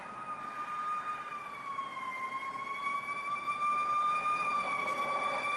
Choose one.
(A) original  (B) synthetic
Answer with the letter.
B